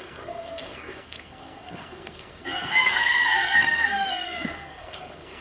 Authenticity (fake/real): fake